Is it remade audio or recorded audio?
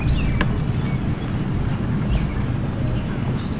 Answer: recorded